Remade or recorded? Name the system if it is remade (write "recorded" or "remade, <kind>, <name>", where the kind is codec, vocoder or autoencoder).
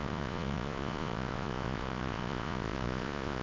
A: remade, vocoder, Vocos